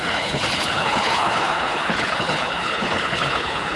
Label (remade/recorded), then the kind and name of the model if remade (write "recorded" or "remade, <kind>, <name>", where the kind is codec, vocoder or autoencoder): remade, codec, HILCodec